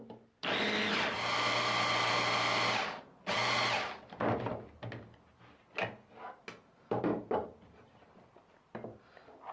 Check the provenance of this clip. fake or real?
real